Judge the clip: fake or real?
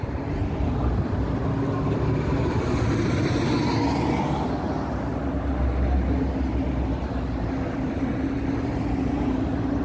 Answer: real